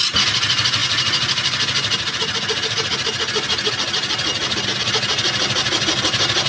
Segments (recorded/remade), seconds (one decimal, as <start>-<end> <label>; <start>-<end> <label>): 0.0-6.5 recorded